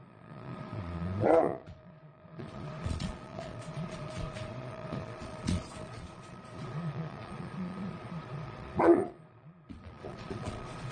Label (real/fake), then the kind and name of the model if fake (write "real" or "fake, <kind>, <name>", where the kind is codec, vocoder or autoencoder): fake, vocoder, Vocos